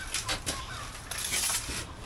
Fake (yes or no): no